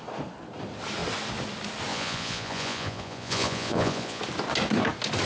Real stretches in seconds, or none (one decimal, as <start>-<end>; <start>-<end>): 0.0-1.9; 4.2-5.3